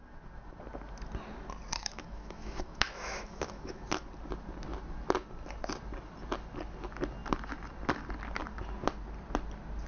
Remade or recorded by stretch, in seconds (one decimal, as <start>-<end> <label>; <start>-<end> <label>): 0.0-1.8 recorded; 1.8-3.8 remade; 3.8-9.9 recorded